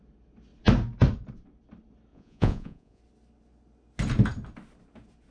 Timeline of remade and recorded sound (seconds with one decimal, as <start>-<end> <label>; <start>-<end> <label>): 0.0-2.1 recorded; 2.1-3.0 remade; 3.0-5.3 recorded